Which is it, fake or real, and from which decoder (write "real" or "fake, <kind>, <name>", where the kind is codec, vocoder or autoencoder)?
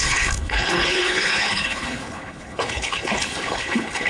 fake, codec, HILCodec